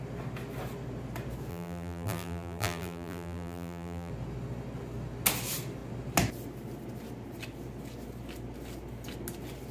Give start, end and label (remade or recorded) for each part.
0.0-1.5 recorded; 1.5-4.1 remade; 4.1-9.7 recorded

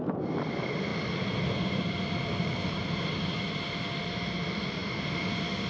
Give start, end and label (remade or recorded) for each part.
0.0-5.7 remade